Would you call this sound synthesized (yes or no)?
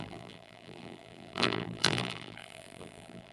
yes